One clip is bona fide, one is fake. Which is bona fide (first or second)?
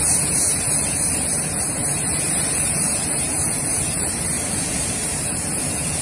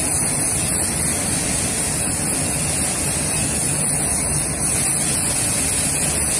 second